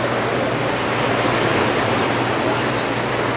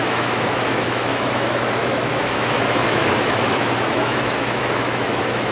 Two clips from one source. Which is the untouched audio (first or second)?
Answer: first